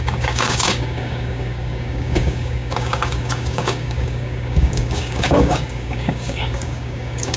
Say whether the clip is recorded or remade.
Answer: remade